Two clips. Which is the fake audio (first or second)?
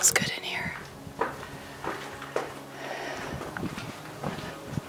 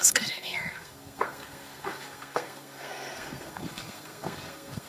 second